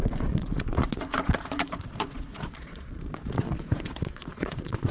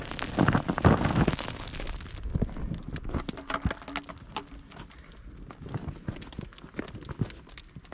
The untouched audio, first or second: second